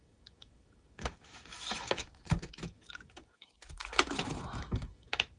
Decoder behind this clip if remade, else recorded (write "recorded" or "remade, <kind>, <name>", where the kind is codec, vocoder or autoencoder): remade, autoencoder, DAC-VAE